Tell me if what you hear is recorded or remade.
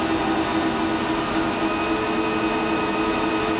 recorded